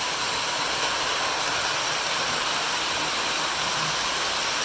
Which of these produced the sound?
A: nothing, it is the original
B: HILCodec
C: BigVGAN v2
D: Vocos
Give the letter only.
A